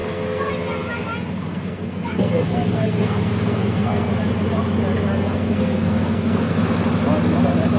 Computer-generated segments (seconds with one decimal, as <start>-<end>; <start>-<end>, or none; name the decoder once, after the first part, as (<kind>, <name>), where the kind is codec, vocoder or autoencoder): 0.0-0.5 (codec, SNAC); 1.5-4.1; 5.1-6.6